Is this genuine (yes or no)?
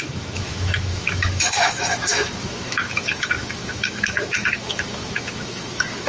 no